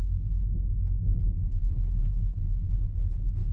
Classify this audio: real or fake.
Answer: real